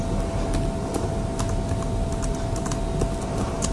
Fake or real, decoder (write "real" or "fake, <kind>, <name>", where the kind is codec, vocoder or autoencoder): real